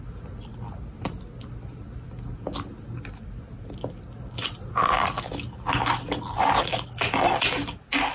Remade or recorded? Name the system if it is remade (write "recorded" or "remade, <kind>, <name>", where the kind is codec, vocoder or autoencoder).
recorded